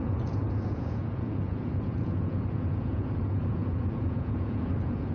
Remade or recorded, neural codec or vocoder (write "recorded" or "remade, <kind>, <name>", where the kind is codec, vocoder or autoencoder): remade, vocoder, Vocos